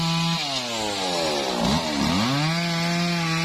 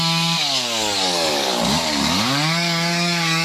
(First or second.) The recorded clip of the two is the first